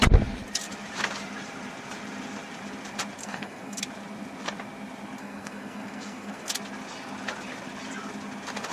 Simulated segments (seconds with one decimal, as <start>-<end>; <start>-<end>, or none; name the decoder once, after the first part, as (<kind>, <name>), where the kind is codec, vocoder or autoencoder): 3.2-3.8 (codec, SNAC); 5.2-6.5